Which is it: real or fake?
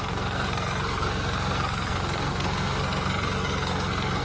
fake